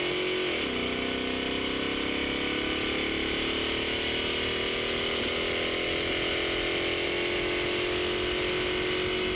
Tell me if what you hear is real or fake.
real